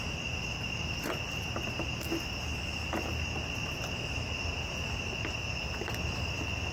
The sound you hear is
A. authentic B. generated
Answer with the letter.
A